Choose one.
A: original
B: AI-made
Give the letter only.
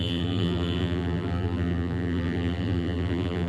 B